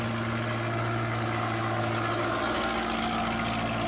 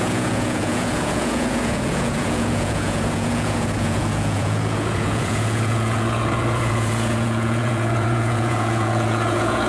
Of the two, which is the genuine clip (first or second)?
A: first